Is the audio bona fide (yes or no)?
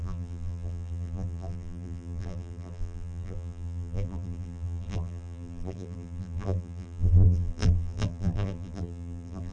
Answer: no